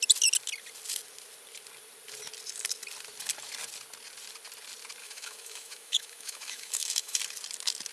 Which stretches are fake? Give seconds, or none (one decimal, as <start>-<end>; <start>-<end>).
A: 5.0-7.2